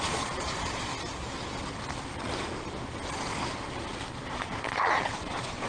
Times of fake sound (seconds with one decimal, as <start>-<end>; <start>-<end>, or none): 0.0-0.9; 4.3-5.7